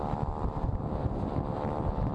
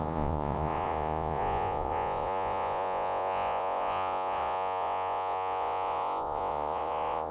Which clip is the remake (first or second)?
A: second